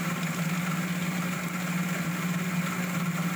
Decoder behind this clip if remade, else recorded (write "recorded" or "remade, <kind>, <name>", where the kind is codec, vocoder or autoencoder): recorded